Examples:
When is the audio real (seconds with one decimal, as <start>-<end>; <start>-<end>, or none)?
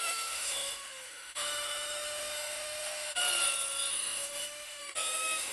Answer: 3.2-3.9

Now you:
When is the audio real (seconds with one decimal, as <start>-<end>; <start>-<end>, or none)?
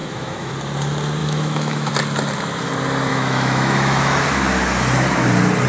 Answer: 0.5-1.2; 1.9-3.1; 4.2-5.7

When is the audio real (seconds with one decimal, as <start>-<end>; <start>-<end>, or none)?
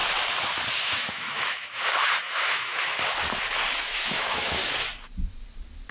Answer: 0.0-0.8; 2.9-3.8; 4.6-5.9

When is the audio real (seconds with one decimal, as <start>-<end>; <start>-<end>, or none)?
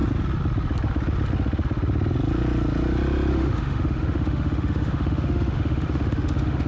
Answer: 0.0-3.3